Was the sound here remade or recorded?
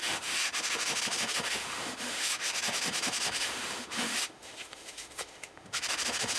remade